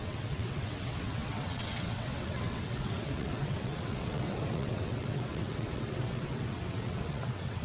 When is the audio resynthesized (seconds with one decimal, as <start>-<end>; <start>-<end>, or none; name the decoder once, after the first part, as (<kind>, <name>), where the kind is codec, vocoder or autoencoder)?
0.0-7.6 (vocoder, WaveNeXt)